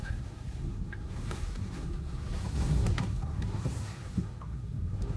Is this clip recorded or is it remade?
remade